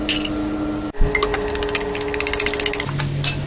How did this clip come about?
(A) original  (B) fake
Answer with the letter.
A